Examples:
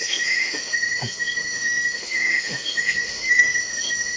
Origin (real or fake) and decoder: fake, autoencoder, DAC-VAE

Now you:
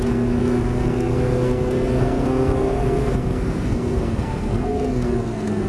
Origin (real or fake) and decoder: fake, codec, SNAC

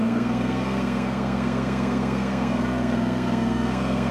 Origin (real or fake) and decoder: fake, codec, SNAC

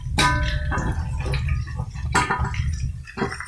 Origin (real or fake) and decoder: real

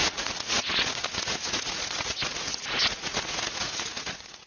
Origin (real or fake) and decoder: fake, vocoder, Vocos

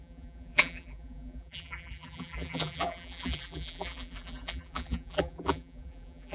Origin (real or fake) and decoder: fake, vocoder, BigVGAN v2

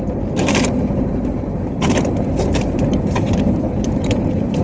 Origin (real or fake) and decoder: fake, vocoder, BigVGAN v2